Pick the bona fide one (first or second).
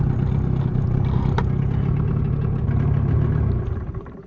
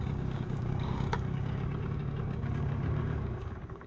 first